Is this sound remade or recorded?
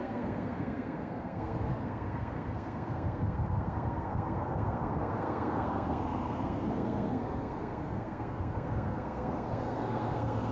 remade